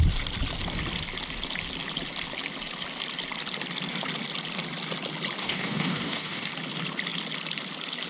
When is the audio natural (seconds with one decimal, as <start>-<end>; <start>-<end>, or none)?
0.0-5.4; 6.5-8.1